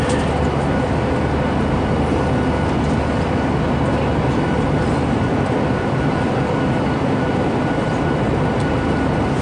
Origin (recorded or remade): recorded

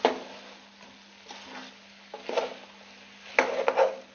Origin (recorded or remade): recorded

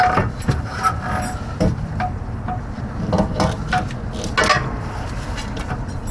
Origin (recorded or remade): recorded